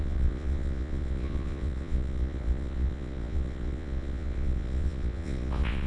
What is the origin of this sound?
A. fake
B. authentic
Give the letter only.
A